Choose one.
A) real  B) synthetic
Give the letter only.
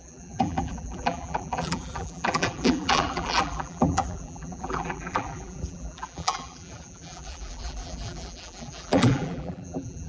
B